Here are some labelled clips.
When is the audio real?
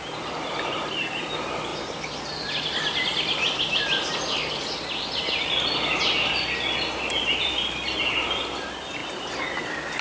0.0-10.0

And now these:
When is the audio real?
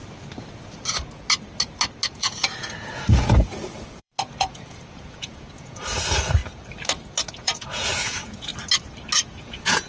0.0-2.1; 6.4-7.4; 8.5-9.4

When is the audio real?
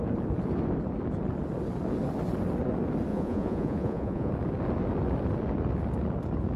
0.0-3.1; 4.3-6.6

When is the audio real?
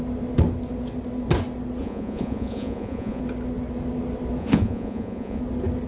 0.0-1.8; 3.2-4.4; 5.4-5.9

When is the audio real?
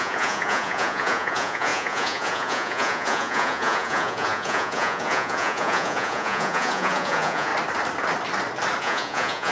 7.5-8.8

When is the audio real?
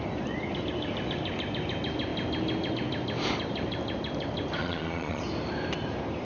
0.0-4.6; 5.2-6.2